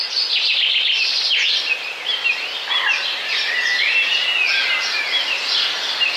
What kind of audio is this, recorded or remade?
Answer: recorded